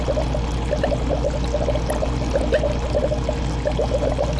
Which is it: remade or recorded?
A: recorded